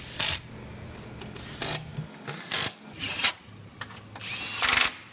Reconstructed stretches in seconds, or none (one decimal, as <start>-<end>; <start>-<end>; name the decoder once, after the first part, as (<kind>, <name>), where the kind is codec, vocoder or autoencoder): none